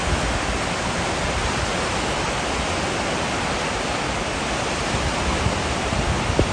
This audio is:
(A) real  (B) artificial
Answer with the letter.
A